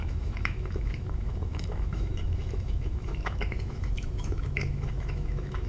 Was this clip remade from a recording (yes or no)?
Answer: yes